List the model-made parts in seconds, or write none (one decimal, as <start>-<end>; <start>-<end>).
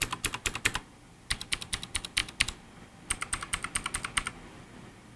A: none